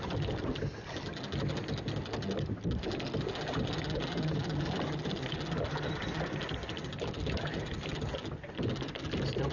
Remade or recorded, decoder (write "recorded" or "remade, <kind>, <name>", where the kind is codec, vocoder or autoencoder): recorded